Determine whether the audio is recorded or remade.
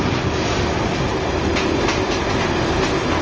recorded